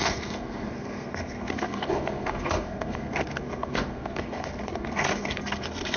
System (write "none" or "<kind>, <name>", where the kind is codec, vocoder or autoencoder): codec, SNAC